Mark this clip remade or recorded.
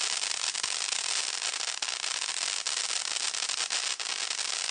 recorded